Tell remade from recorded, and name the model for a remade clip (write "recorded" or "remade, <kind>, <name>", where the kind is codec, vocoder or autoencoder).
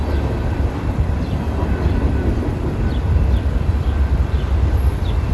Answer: remade, vocoder, BigVGAN v2